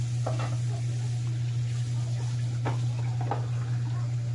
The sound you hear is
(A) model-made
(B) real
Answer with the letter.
B